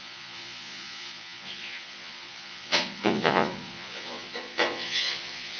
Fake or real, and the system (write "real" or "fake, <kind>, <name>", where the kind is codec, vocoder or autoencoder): fake, vocoder, Vocos